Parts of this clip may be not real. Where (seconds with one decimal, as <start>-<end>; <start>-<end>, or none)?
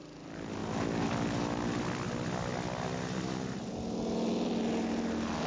none